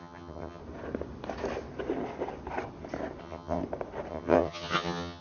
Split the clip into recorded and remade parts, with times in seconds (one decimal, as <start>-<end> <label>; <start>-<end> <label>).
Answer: 0.0-0.6 remade; 0.6-3.2 recorded; 3.2-3.6 remade; 3.6-4.1 recorded; 4.1-5.2 remade